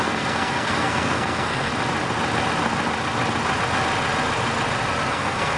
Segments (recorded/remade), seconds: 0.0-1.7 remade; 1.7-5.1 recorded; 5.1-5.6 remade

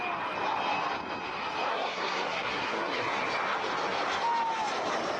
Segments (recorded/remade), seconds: 0.0-1.7 recorded; 1.7-3.2 remade; 3.2-5.2 recorded

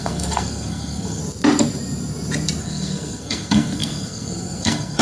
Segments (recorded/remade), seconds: 0.0-1.2 remade; 1.2-2.6 recorded; 2.6-5.0 remade

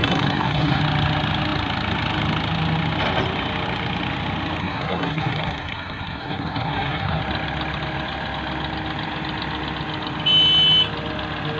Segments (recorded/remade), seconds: 0.0-0.8 remade; 0.8-4.6 recorded; 4.6-7.2 remade; 7.2-11.6 recorded

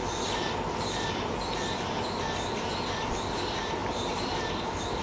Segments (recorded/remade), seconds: 0.0-5.0 recorded